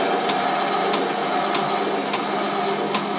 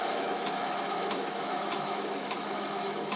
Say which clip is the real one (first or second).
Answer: first